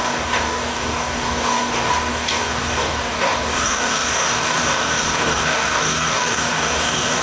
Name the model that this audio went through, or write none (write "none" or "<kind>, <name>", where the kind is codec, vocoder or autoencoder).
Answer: codec, DAC